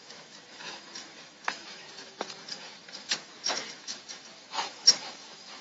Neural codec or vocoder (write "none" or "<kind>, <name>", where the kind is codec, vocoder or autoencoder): autoencoder, DAC-VAE